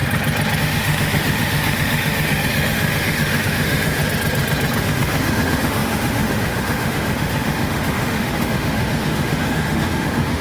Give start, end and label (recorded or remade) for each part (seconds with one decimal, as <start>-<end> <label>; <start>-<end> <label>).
0.0-0.6 recorded; 0.6-4.0 remade; 4.0-4.8 recorded; 4.8-10.4 remade

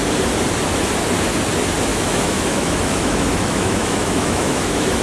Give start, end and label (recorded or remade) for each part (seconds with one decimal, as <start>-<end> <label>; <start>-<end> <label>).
0.0-1.9 recorded; 1.9-5.0 remade

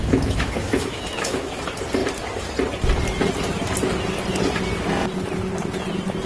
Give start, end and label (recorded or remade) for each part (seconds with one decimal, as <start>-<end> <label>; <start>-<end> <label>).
0.0-1.6 remade; 1.6-6.3 recorded

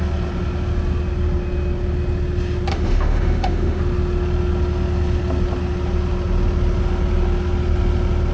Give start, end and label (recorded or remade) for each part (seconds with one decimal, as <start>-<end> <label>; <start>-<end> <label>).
0.0-2.7 recorded; 2.7-3.8 remade; 3.8-8.3 recorded

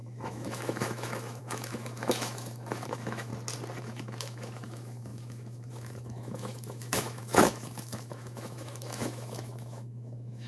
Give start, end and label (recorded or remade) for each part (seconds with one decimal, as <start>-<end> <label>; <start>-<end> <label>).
0.0-3.3 remade; 3.3-3.8 recorded; 3.8-10.5 remade